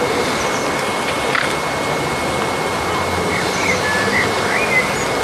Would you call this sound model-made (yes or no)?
no